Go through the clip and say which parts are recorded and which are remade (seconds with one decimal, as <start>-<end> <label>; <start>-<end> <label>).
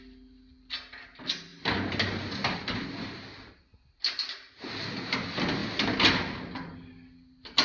0.0-7.6 recorded